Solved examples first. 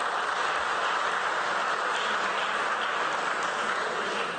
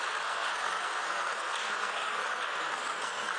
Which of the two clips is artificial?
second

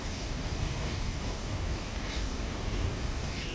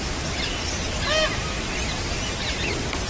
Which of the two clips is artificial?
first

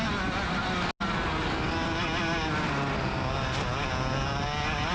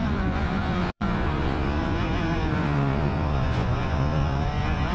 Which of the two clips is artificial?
second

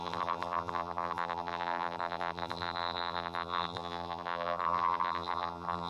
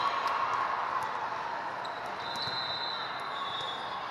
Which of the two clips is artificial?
first